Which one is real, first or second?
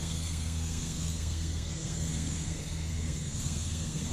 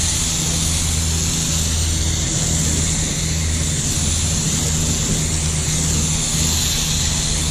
second